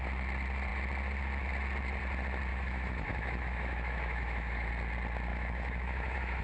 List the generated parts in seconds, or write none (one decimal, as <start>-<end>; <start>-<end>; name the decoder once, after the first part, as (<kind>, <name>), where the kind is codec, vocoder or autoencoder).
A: 2.5-4.7 (autoencoder, DAC-VAE); 5.3-6.4